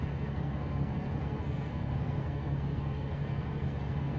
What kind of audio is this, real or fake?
fake